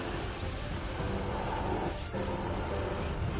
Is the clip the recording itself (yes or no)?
yes